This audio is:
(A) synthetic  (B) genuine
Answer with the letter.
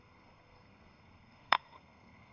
A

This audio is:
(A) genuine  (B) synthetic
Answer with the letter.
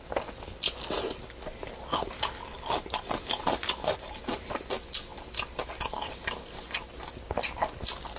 A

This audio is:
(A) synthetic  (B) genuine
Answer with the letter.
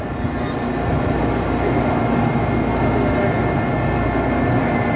B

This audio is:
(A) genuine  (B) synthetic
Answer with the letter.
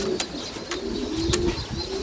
A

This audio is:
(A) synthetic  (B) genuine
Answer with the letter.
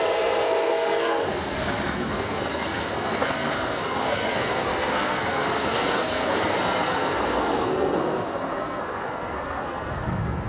A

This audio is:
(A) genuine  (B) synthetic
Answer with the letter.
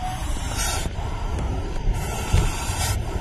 B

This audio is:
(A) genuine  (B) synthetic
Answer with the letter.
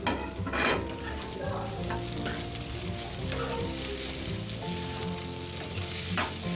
A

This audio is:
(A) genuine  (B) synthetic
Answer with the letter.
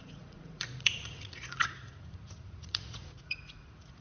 B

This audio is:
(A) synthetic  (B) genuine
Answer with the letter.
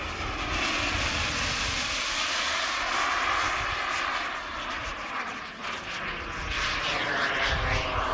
B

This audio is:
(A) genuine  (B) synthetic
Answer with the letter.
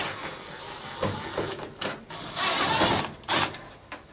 A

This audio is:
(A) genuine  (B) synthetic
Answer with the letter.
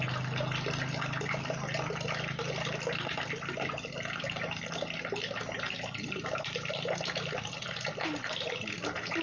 A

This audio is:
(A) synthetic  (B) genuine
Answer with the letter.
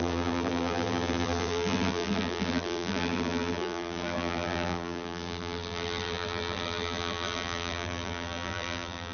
A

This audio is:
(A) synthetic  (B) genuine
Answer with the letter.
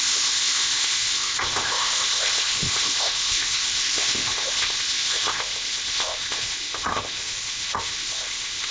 A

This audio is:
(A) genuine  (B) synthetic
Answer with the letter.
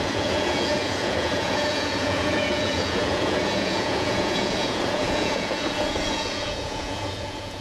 B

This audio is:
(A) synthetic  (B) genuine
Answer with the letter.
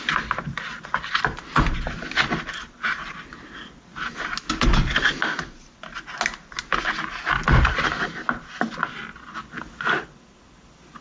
B